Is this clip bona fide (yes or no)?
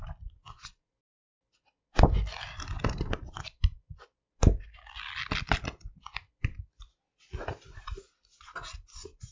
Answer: yes